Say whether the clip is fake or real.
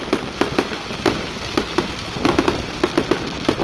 real